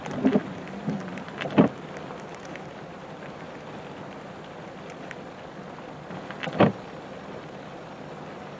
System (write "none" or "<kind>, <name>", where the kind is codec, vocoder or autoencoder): none